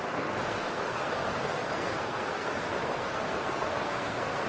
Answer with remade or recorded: remade